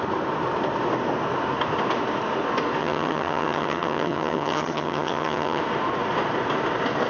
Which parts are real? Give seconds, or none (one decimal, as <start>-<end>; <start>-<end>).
0.0-2.8; 5.6-7.1